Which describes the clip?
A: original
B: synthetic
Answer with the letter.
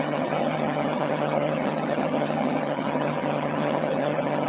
B